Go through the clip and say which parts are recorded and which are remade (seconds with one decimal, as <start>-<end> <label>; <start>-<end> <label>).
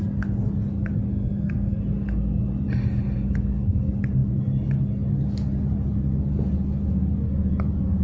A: 0.0-1.1 recorded; 1.1-1.8 remade; 1.8-8.0 recorded